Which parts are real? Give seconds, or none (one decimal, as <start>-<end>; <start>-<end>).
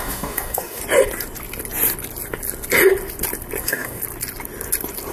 0.8-3.6; 4.0-5.1